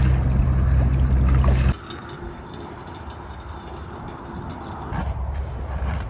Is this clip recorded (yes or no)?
yes